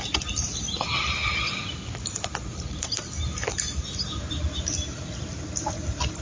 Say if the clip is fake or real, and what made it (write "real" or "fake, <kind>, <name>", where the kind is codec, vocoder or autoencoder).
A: real